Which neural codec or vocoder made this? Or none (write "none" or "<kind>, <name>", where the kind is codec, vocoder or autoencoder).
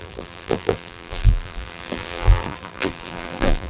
vocoder, BigVGAN v2